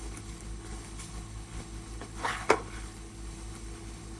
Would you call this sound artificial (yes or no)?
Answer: yes